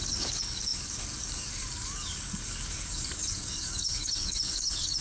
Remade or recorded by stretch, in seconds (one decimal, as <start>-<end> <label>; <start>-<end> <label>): 0.0-5.0 remade